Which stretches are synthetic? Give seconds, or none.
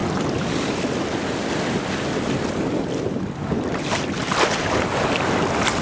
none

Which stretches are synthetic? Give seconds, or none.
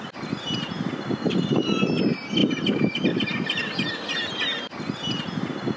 none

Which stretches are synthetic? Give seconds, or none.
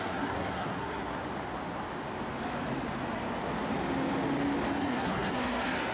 0.0-1.2; 4.7-5.9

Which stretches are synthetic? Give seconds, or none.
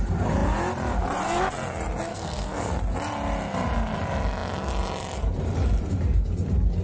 2.1-2.7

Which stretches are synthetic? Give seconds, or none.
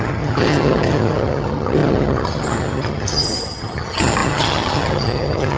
0.0-5.6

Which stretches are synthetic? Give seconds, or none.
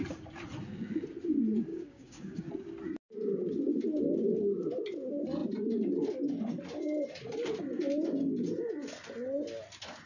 1.7-2.5